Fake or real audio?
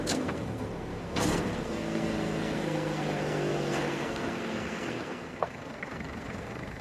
fake